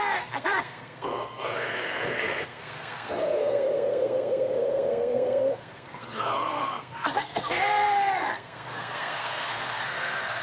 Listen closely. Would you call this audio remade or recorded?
remade